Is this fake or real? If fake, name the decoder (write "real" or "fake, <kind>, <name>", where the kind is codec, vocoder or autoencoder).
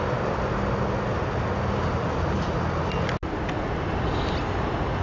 real